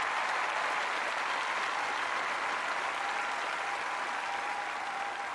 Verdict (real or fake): real